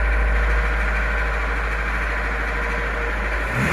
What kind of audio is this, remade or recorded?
recorded